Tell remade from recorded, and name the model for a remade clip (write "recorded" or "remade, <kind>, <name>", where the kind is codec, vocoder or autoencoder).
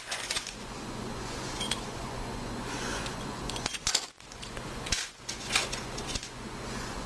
remade, vocoder, Vocos